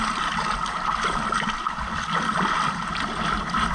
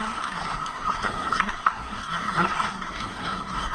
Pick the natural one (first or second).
first